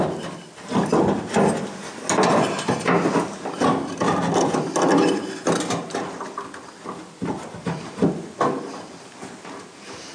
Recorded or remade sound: recorded